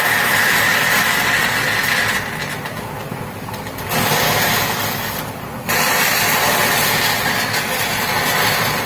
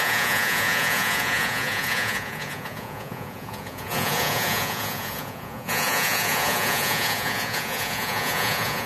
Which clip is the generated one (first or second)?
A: second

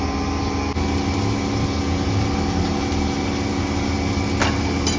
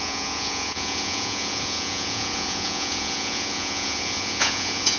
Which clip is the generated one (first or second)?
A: second